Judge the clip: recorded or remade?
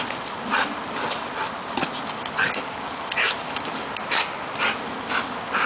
recorded